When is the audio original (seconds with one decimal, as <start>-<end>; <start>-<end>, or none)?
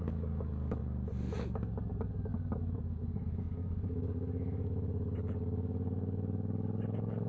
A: 0.8-1.4